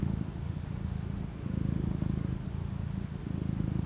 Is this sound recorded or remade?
remade